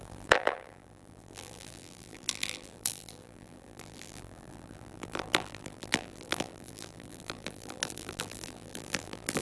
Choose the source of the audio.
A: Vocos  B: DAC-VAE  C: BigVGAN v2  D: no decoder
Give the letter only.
C